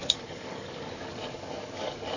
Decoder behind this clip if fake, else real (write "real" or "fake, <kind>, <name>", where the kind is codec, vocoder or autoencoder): fake, codec, DAC